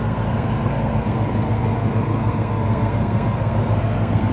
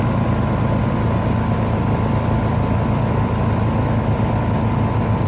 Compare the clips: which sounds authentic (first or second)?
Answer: second